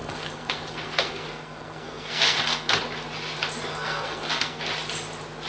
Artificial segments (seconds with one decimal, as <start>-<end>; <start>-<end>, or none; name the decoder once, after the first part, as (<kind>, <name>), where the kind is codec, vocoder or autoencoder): 0.0-2.8 (codec, SNAC); 3.7-4.6

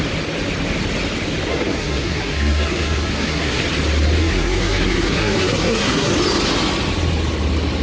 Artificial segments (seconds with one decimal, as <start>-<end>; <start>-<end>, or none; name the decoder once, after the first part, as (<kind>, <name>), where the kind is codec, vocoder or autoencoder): 1.5-3.6 (codec, SNAC); 4.2-6.1

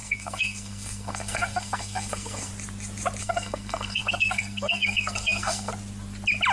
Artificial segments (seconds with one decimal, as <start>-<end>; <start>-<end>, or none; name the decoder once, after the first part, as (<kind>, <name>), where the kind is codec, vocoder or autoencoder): 0.0-2.5 (codec, SNAC); 3.2-5.7

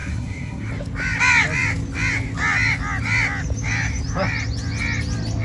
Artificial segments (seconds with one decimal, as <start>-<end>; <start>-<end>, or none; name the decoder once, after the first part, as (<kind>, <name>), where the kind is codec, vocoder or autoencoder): 0.0-0.7 (codec, SNAC)